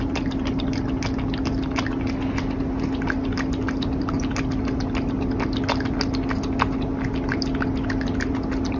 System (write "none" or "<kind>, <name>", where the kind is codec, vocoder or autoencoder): none